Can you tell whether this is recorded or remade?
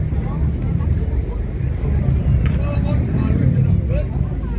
recorded